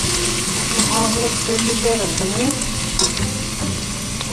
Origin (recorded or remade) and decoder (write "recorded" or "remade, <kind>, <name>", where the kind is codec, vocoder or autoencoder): remade, vocoder, Vocos